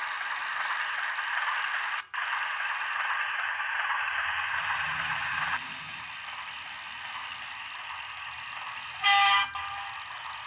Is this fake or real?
real